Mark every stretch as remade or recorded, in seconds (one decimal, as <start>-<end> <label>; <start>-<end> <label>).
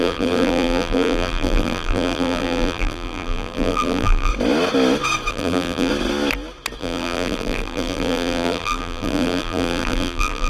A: 0.0-4.3 remade; 4.3-5.3 recorded; 5.3-5.9 remade; 5.9-6.8 recorded; 6.8-10.5 remade